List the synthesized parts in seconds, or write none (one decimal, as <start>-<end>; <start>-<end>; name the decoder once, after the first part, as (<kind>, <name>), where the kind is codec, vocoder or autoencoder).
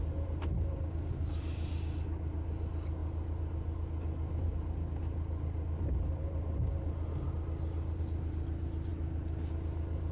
none